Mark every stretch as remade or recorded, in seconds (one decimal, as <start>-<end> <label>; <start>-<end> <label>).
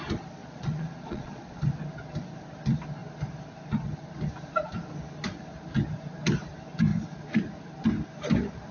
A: 0.0-0.4 recorded; 0.4-1.6 remade; 1.6-8.7 recorded